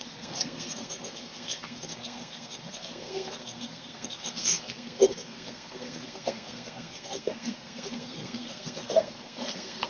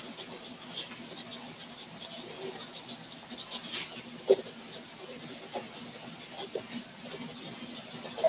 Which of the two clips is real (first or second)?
second